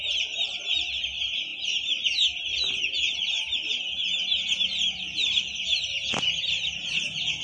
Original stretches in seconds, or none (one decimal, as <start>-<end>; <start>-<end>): 0.0-7.4